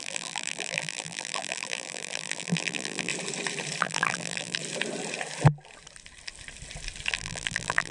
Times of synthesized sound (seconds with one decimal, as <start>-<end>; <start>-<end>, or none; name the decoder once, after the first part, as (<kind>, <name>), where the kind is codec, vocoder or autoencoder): 0.0-3.1 (vocoder, BigVGAN v2); 3.8-4.6; 7.1-7.9